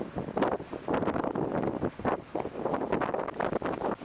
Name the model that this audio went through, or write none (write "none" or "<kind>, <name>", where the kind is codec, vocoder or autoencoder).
none